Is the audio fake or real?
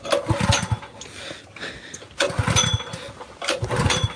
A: real